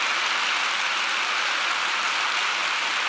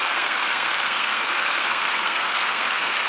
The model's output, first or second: second